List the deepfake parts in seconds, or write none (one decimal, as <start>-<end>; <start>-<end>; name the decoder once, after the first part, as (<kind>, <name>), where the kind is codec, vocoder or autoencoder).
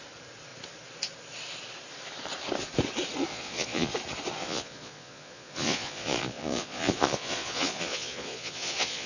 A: 3.3-3.9 (vocoder, Vocos); 4.4-9.1